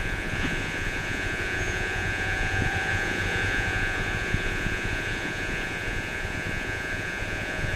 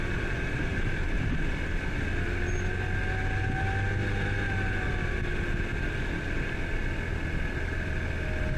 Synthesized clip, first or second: first